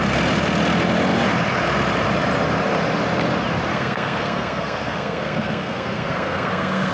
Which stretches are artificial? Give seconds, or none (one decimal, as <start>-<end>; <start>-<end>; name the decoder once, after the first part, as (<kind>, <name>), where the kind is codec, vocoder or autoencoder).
3.7-6.9 (codec, SNAC)